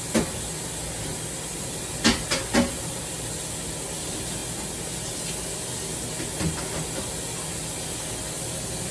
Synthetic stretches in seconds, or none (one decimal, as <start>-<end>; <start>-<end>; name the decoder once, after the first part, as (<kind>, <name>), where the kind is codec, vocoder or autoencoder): none